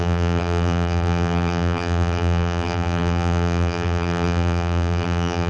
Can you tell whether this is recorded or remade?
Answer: remade